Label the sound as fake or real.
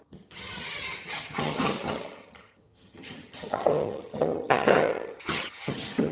fake